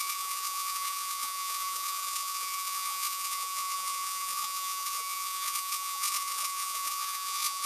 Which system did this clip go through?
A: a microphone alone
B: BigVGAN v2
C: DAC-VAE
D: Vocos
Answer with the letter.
D